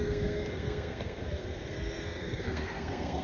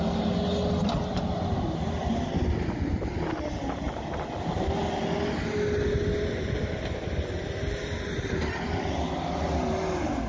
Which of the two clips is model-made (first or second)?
first